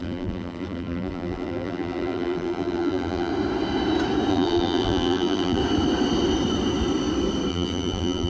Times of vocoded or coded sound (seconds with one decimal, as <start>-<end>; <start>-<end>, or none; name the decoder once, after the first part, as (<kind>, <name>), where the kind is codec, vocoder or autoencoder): 0.0-3.3 (vocoder, BigVGAN v2); 4.3-5.6; 7.5-8.3